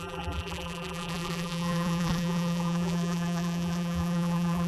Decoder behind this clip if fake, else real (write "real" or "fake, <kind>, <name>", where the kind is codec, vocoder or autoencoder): fake, vocoder, BigVGAN v2